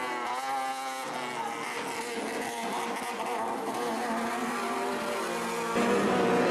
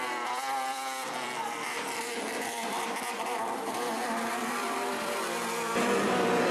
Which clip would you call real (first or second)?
first